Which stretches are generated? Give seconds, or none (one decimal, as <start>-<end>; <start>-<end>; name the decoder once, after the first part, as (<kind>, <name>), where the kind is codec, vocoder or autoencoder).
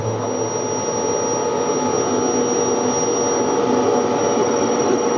4.4-5.2 (vocoder, WaveNeXt)